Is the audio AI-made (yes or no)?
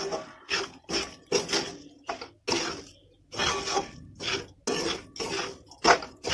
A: no